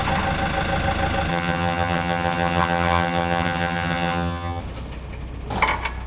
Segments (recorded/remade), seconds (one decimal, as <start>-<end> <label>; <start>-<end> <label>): 0.0-1.3 recorded; 1.3-4.6 remade; 4.6-6.1 recorded